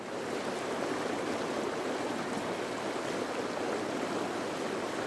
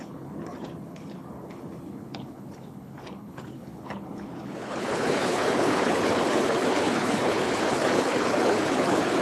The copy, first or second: second